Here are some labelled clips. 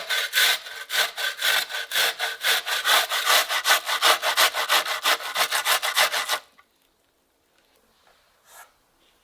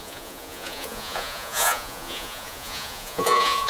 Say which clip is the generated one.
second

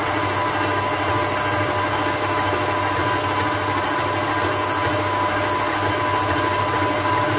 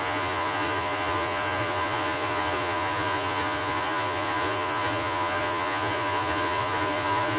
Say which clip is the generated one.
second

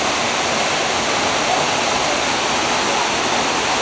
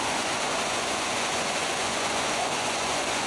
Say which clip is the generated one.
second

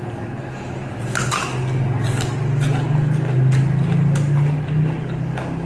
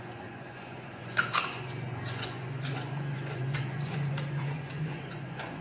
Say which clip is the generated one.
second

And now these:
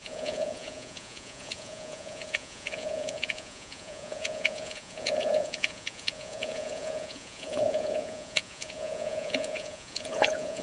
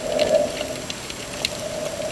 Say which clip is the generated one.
first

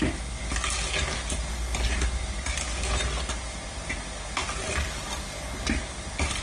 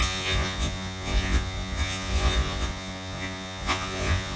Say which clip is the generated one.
second